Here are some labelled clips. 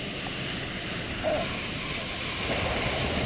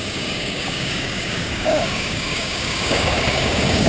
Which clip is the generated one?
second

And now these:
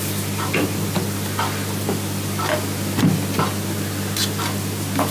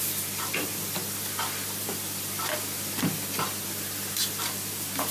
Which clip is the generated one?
second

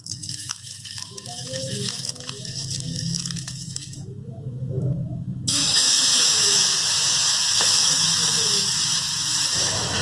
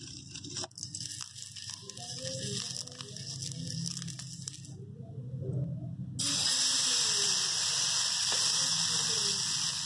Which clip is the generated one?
first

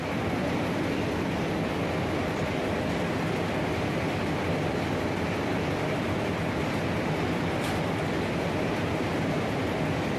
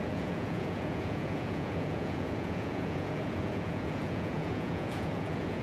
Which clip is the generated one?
second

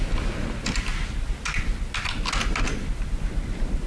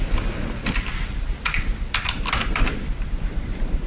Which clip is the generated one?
second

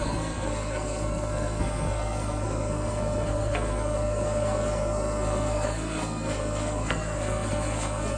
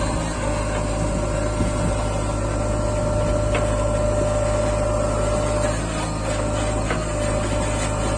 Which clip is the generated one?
first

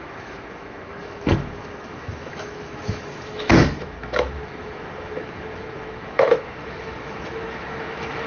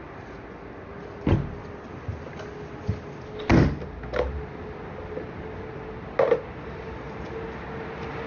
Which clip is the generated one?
first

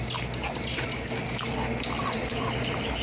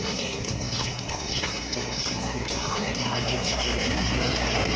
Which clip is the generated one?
second